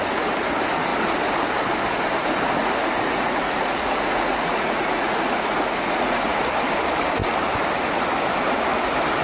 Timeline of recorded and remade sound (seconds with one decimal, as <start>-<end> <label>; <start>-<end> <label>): 0.0-2.6 recorded; 2.6-6.4 remade; 6.4-9.2 recorded